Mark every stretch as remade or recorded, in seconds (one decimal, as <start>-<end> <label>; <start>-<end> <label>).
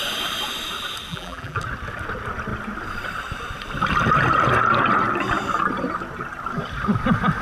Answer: 0.0-1.1 recorded; 1.1-1.6 remade; 1.6-7.4 recorded